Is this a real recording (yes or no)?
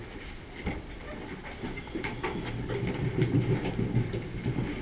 yes